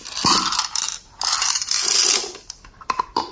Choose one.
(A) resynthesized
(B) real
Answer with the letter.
B